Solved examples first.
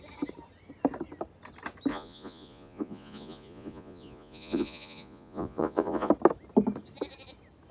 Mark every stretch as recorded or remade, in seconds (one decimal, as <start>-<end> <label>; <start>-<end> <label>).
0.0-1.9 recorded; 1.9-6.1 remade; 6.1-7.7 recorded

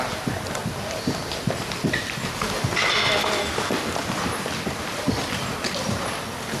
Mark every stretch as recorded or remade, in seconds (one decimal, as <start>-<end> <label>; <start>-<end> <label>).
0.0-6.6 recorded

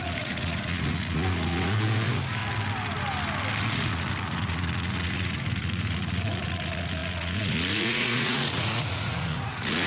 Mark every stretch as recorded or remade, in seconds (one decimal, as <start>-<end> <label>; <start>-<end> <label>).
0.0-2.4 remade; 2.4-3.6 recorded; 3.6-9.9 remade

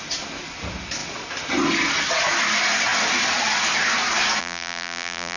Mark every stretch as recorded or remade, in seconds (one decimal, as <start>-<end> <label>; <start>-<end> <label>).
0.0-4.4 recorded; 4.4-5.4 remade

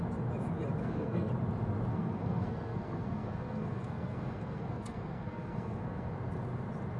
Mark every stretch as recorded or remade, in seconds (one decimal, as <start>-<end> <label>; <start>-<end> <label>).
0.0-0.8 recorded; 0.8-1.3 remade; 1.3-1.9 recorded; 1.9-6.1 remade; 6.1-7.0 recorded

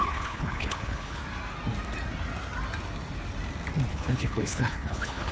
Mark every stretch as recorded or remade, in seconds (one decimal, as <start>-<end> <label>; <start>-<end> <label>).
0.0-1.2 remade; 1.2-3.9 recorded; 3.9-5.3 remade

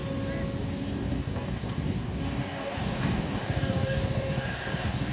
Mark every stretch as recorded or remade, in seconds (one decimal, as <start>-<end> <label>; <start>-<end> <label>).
0.0-0.6 recorded; 0.6-5.1 remade

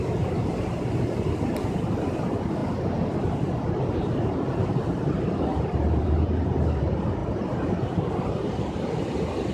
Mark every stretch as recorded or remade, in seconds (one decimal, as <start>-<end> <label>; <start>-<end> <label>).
0.0-2.6 recorded; 2.6-3.3 remade; 3.3-5.5 recorded; 5.5-6.3 remade; 6.3-7.2 recorded; 7.2-8.1 remade; 8.1-9.5 recorded